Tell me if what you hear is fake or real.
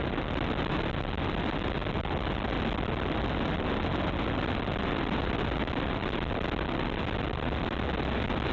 fake